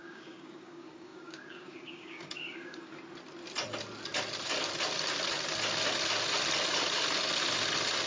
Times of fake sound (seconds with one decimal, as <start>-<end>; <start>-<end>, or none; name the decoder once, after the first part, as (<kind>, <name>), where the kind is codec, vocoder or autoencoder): 0.0-2.9 (codec, DAC)